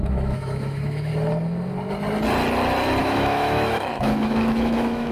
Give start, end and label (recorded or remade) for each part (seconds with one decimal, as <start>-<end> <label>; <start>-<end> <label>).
0.0-1.1 remade; 1.1-3.0 recorded; 3.0-5.1 remade

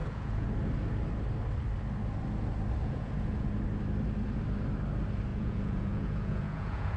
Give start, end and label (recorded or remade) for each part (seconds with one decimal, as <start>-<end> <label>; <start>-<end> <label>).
0.0-0.5 remade; 0.5-2.8 recorded; 2.8-3.5 remade; 3.5-5.3 recorded; 5.3-7.0 remade

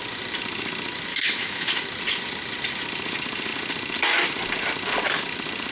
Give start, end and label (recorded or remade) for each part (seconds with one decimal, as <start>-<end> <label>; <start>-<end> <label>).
0.0-1.1 recorded; 1.1-1.7 remade; 1.7-5.7 recorded

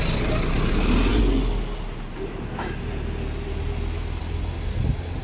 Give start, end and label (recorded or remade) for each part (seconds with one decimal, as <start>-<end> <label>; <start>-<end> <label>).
0.0-5.2 recorded

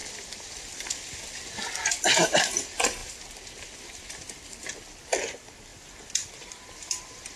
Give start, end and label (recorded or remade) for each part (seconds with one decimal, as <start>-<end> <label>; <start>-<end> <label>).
0.0-7.4 recorded

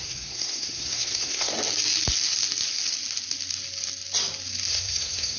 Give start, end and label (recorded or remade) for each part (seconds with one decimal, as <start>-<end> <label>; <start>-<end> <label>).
0.0-1.5 remade; 1.5-4.7 recorded; 4.7-5.4 remade

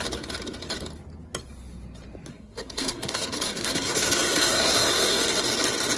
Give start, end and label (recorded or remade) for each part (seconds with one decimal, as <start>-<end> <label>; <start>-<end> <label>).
0.0-2.3 recorded; 2.3-5.2 remade; 5.2-6.0 recorded

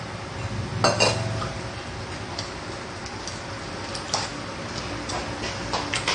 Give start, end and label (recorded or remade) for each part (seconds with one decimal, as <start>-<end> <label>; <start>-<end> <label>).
0.0-6.1 recorded